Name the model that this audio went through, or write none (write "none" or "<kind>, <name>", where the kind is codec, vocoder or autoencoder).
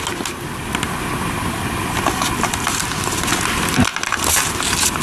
none